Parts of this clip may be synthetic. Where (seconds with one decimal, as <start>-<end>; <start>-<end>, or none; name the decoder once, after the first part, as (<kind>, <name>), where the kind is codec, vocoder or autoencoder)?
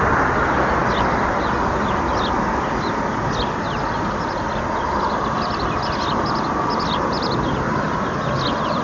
none